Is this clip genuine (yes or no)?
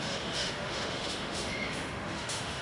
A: no